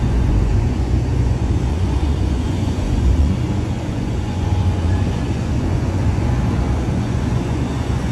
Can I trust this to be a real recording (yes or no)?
no